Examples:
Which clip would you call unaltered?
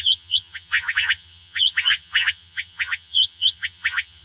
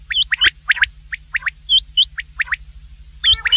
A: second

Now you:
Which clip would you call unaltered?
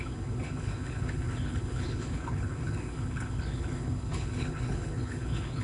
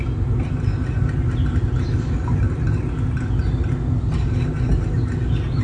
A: second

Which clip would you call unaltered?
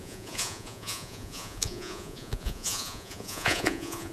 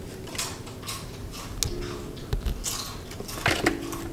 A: second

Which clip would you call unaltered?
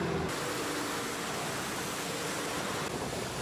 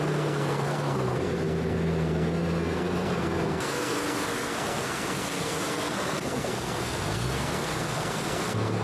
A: first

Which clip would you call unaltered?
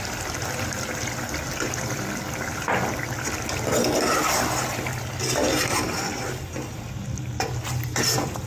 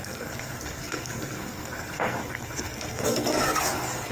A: first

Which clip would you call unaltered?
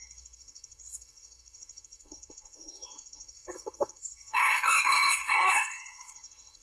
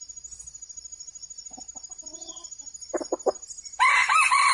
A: second